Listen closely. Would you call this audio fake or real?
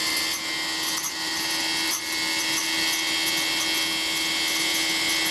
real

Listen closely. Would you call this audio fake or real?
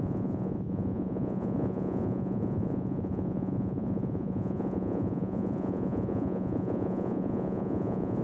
fake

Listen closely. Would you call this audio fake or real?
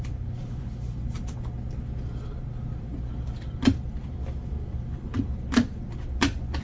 fake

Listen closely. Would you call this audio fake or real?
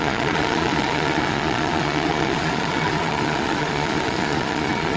fake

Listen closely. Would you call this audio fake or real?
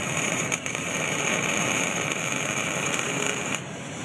fake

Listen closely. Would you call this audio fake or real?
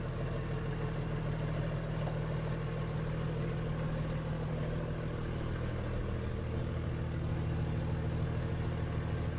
real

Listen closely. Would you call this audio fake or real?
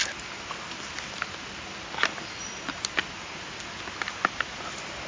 real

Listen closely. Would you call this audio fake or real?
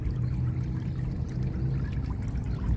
real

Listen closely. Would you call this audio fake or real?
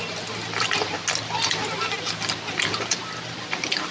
real